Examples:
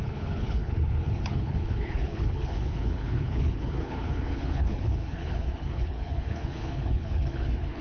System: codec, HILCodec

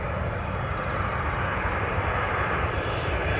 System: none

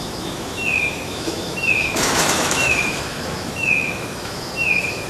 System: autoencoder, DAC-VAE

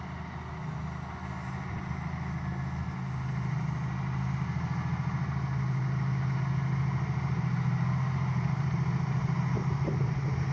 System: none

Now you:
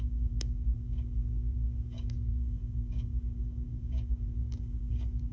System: codec, DAC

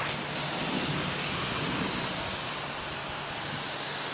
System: none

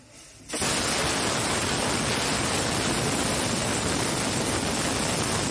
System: none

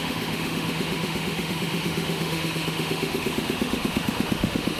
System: autoencoder, DAC-VAE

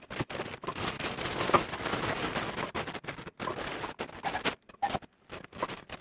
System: none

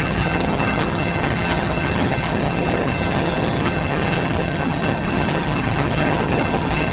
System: vocoder, HiFi-GAN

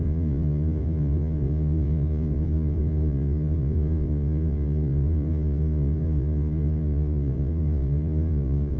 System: vocoder, Vocos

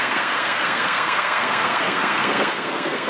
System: codec, SNAC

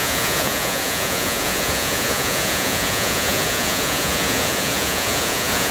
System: vocoder, Vocos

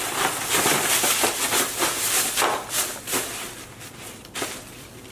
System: none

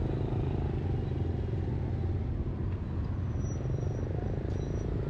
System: none